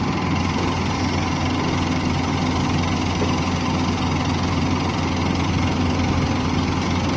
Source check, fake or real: real